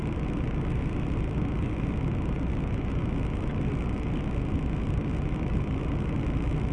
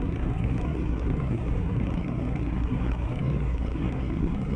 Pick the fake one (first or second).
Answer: second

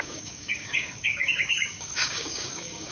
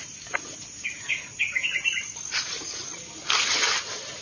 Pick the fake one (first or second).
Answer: first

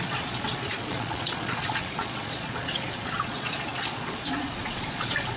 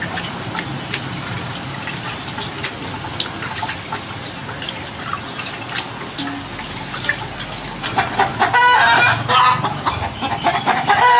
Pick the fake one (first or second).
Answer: first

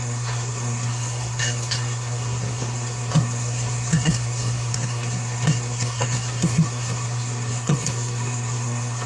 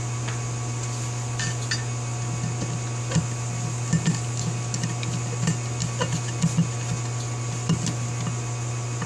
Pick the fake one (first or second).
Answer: first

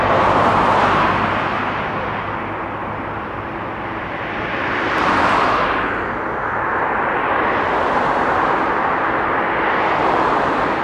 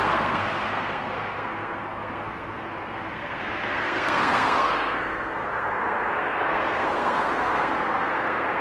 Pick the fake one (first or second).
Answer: second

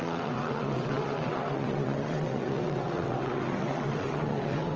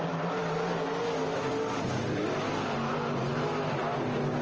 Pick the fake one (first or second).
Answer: first